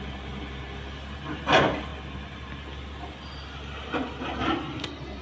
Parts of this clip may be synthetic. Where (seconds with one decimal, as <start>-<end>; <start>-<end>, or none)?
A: none